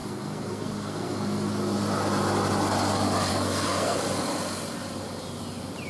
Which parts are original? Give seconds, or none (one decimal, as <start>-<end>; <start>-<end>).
1.5-3.3; 4.0-5.9